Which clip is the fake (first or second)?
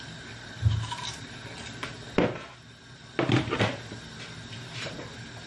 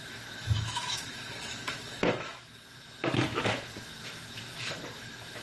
second